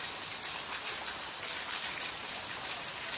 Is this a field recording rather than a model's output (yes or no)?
yes